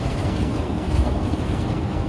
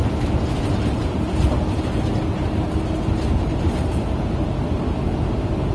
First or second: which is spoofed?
first